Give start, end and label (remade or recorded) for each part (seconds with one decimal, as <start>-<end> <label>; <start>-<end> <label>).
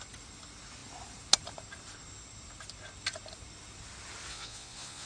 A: 0.0-4.3 recorded; 4.3-5.1 remade